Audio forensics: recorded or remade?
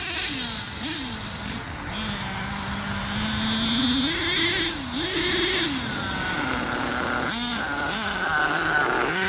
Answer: recorded